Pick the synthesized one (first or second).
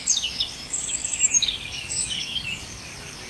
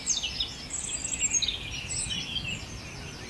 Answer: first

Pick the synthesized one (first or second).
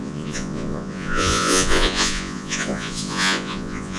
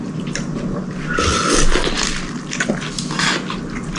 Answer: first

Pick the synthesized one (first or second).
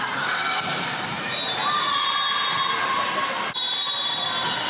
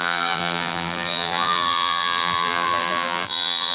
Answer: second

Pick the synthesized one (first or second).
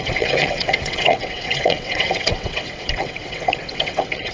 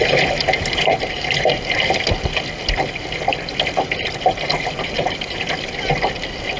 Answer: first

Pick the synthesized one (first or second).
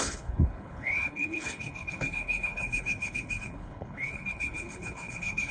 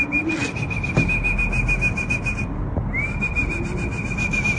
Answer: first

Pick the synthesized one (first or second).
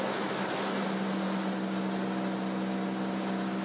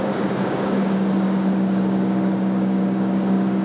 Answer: second